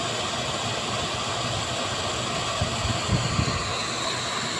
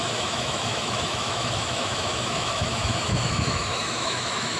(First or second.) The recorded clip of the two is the first